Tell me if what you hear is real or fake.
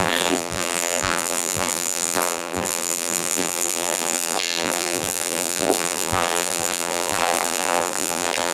fake